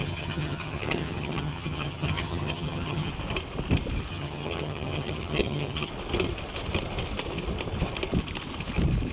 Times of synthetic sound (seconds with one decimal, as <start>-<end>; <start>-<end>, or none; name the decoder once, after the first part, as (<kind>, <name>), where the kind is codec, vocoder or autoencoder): 0.0-3.1 (vocoder, HiFi-GAN); 4.1-5.9